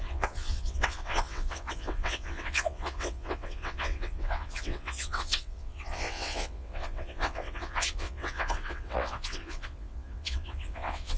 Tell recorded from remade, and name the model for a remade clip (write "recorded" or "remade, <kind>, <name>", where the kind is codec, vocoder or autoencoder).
remade, vocoder, WaveNeXt